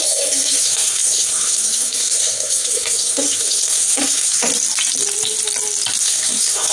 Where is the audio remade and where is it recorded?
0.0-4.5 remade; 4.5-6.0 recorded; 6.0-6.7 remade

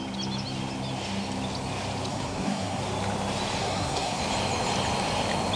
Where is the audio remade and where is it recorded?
0.0-2.1 recorded; 2.1-2.8 remade; 2.8-3.6 recorded; 3.6-4.2 remade; 4.2-5.6 recorded

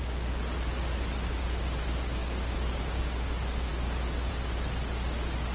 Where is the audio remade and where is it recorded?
0.0-5.5 recorded

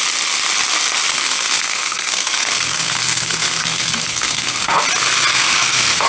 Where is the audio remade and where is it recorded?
0.0-1.1 recorded; 1.1-4.8 remade; 4.8-5.3 recorded; 5.3-6.1 remade

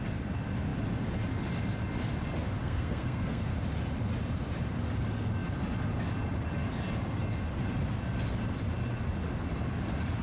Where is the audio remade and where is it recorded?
0.0-2.6 recorded; 2.6-3.5 remade; 3.5-10.2 recorded

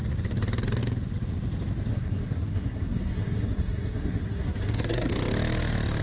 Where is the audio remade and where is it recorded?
0.0-1.9 recorded; 1.9-5.1 remade; 5.1-6.0 recorded

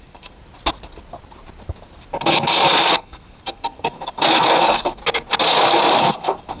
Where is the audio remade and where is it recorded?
0.0-0.4 remade; 0.4-2.9 recorded; 2.9-5.0 remade; 5.0-6.0 recorded; 6.0-6.6 remade